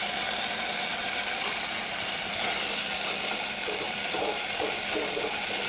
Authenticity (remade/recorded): recorded